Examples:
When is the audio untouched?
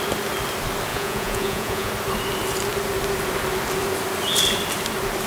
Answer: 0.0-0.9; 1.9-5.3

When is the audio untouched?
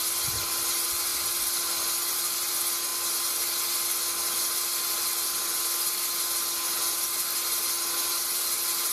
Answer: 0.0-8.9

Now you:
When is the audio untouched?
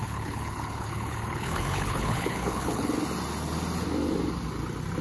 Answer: 2.9-5.0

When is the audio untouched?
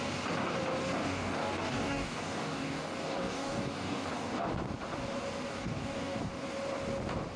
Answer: 0.0-1.0; 4.4-5.5; 6.3-7.4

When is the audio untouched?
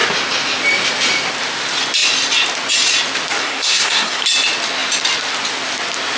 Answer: 0.0-3.4; 4.2-6.2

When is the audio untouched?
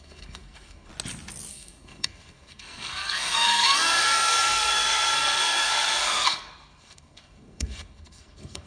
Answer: 0.9-1.5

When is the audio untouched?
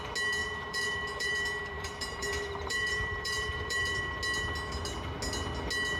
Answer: 0.0-0.4; 4.0-6.0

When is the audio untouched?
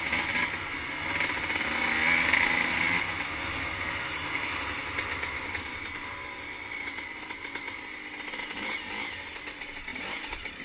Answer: 0.0-10.6